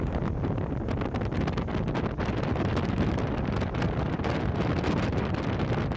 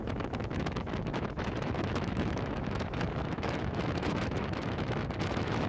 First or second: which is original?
first